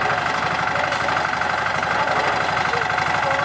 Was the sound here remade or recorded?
recorded